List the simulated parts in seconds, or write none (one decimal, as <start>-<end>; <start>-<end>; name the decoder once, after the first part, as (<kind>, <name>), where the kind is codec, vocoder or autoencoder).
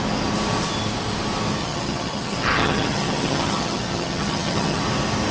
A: 1.6-4.8 (vocoder, HiFi-GAN)